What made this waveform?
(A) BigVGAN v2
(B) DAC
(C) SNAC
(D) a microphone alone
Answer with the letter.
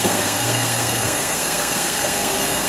C